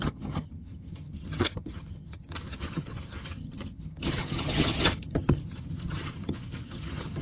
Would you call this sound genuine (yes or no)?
no